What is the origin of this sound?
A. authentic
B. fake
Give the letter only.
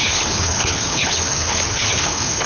B